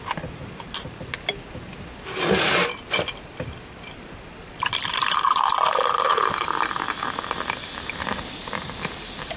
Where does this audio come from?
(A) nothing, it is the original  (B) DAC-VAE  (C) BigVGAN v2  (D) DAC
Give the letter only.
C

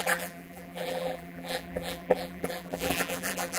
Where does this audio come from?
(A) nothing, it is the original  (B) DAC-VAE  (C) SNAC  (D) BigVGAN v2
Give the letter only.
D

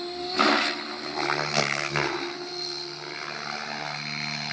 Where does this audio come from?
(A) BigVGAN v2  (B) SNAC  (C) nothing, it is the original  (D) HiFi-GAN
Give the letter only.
C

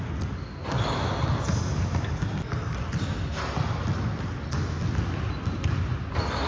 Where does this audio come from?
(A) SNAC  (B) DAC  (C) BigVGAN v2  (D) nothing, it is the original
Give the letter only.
D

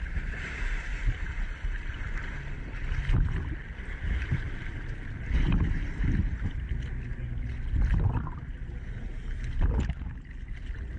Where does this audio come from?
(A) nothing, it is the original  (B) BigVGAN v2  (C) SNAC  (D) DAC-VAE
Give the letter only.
A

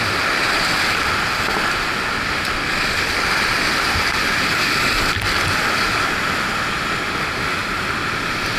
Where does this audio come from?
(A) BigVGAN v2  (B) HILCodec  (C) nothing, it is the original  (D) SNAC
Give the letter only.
C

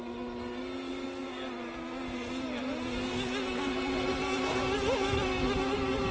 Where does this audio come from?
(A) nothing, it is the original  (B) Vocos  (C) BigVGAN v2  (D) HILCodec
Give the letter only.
A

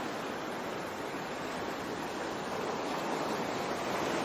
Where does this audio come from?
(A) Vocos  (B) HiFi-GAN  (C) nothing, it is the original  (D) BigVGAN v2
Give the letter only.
C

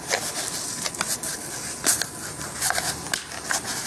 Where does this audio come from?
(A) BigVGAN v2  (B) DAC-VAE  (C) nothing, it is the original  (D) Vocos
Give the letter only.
C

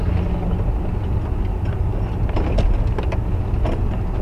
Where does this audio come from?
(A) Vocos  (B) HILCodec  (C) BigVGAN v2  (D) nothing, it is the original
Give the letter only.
D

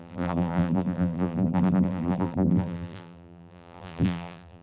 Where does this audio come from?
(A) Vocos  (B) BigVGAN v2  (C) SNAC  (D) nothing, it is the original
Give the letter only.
B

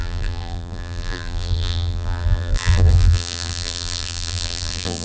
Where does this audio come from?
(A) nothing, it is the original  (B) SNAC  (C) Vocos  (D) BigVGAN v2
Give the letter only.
D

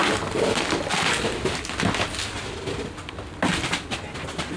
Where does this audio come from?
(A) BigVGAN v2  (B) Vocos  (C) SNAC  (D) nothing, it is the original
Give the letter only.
D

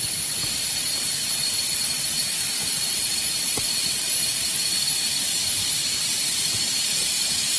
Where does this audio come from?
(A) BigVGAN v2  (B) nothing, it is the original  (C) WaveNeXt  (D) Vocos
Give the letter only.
A